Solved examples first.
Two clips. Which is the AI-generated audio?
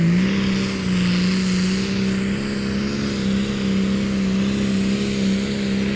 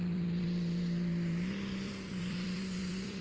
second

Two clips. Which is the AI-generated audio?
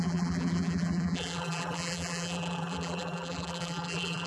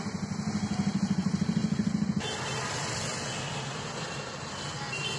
first